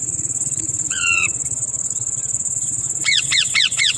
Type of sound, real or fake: fake